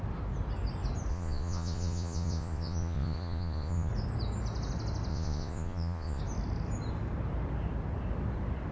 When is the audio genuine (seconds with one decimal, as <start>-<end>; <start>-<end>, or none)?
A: 0.0-1.1; 3.9-5.1; 6.2-8.7